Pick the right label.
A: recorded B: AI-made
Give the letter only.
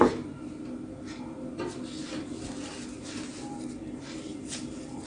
A